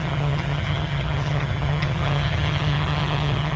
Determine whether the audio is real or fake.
fake